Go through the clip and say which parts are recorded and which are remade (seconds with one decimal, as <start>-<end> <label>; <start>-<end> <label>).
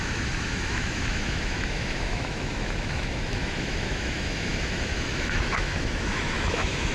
0.0-6.9 remade